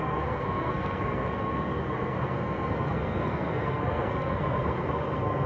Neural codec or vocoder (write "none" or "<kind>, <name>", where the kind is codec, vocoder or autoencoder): codec, SNAC